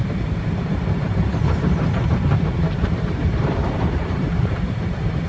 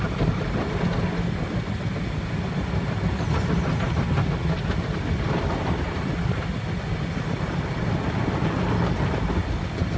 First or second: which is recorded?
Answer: second